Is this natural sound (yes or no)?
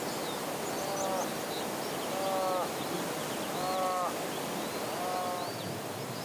yes